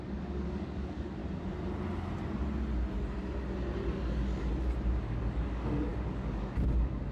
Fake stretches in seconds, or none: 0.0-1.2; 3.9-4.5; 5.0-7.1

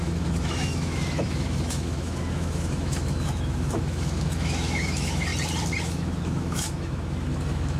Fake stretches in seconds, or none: 0.0-5.3; 5.8-7.8

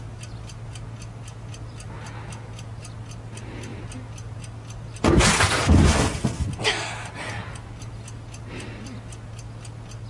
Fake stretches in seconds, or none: none